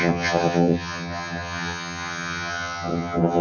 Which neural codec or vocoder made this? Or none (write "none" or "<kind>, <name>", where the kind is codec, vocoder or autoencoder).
vocoder, HiFi-GAN